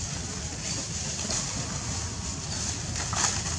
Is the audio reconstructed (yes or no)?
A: no